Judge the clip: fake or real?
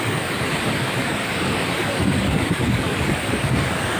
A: fake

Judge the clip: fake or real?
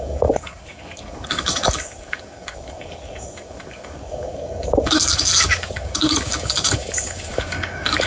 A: fake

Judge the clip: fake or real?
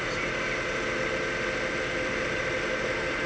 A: real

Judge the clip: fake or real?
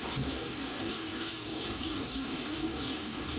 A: fake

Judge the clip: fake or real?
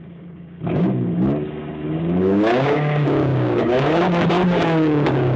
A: fake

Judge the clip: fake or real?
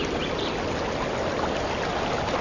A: real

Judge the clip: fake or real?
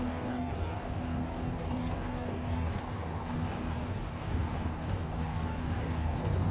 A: fake